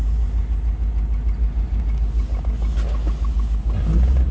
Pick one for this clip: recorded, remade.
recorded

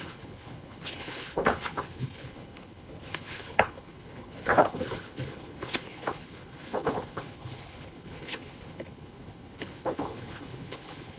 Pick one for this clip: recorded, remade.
remade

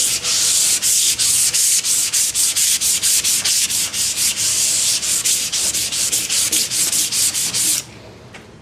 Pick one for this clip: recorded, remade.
recorded